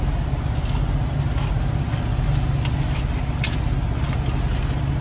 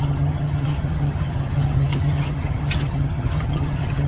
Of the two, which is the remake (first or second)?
second